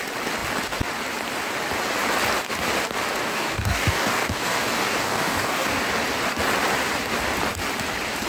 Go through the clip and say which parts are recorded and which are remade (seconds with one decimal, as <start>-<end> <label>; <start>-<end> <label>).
0.0-3.2 recorded; 3.2-5.8 remade; 5.8-8.3 recorded